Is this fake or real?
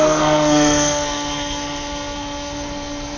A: fake